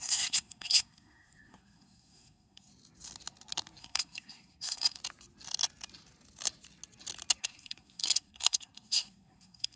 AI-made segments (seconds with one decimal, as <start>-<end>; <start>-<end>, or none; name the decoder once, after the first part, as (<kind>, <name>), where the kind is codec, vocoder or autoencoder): 0.0-2.7 (codec, SNAC); 3.8-5.0; 7.4-9.8